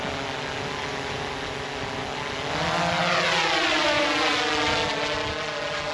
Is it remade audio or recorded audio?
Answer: recorded